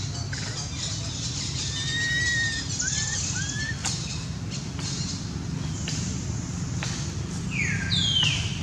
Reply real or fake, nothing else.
real